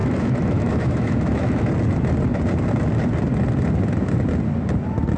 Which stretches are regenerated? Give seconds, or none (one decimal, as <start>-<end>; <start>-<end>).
0.0-1.7